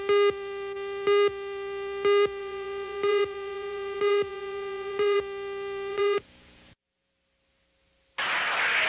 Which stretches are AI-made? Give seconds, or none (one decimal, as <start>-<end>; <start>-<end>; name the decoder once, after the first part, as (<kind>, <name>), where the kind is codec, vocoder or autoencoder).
2.4-5.2 (vocoder, Vocos); 5.9-7.1